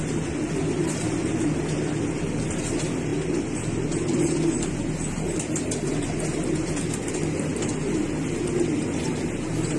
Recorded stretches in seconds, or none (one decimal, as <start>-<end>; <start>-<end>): 0.0-9.8